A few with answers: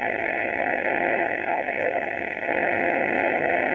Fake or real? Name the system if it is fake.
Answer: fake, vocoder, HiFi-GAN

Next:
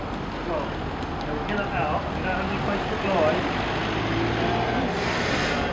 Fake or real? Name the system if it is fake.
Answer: real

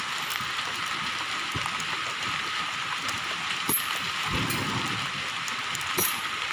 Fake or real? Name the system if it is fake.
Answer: real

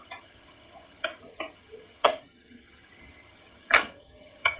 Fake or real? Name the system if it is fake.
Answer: fake, vocoder, HiFi-GAN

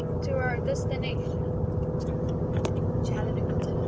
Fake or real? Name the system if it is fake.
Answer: real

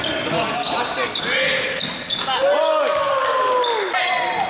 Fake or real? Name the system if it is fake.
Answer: real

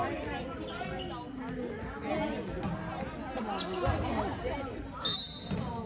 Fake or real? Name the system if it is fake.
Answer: real